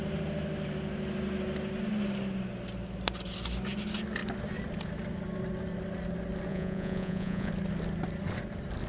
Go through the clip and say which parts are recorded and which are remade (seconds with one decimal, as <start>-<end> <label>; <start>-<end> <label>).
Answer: 0.0-6.5 recorded; 6.5-7.5 remade; 7.5-8.9 recorded